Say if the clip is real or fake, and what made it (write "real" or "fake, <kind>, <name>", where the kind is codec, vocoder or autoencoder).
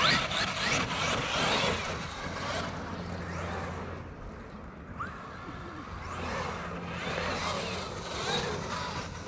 real